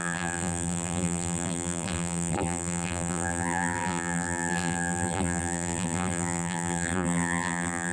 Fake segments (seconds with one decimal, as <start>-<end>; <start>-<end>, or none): 0.0-7.9

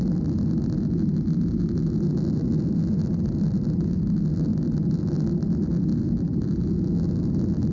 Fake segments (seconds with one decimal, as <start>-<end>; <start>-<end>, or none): 5.9-6.4

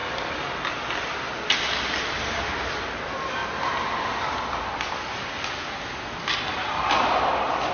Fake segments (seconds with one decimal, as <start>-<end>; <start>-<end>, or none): none

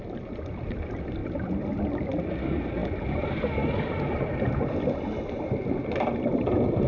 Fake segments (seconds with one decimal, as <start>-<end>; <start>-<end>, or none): none

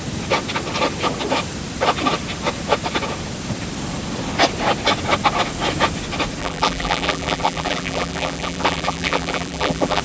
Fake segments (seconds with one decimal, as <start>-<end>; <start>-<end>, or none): 6.4-10.0